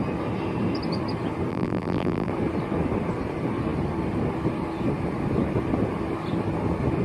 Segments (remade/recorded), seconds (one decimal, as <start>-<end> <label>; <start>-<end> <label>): 0.0-1.5 recorded; 1.5-2.3 remade; 2.3-7.0 recorded